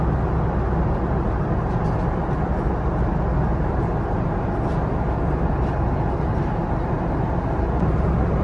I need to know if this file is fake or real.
real